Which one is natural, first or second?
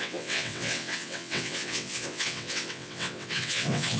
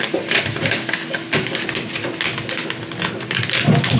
second